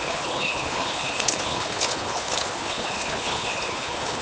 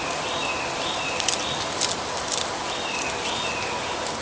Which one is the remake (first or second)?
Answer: first